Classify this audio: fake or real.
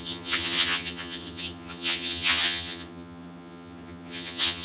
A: fake